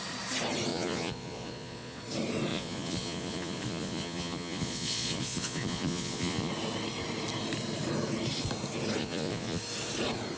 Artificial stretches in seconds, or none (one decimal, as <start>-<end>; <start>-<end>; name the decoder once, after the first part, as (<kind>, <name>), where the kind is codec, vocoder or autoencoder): 0.7-2.0 (vocoder, Vocos); 2.5-6.5; 9.0-9.6

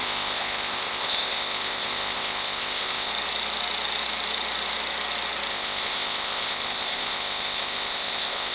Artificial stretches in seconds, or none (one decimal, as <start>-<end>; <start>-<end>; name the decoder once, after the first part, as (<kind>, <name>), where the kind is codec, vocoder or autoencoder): 0.0-3.1 (codec, ZipCodec); 5.5-8.5

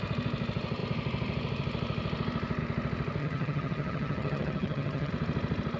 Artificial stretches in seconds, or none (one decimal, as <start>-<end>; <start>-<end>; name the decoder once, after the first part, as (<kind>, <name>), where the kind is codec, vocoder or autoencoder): 3.2-5.1 (vocoder, HiFi-GAN)

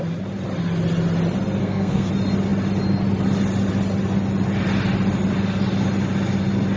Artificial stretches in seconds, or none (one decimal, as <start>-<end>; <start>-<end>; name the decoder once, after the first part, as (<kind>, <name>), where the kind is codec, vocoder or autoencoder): 1.6-2.1 (codec, SNAC)

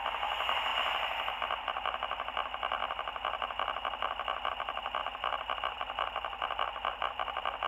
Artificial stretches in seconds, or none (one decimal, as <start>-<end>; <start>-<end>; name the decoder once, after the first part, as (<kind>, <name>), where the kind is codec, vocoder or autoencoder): 0.0-0.7 (vocoder, BigVGAN v2); 1.3-2.8; 4.5-5.0; 5.6-7.7

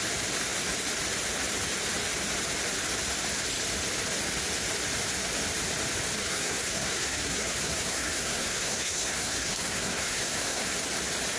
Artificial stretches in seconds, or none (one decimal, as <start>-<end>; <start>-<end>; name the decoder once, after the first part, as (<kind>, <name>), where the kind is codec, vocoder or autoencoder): 6.2-10.7 (codec, SNAC)